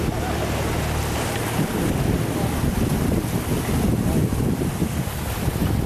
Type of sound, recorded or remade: recorded